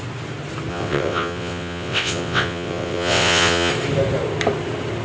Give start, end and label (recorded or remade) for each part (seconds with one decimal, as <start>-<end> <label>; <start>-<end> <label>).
0.0-0.7 recorded; 0.7-3.7 remade; 3.7-5.0 recorded